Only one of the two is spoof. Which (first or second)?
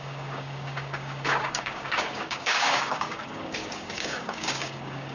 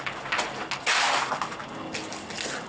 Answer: first